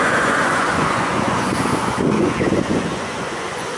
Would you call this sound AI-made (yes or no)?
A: yes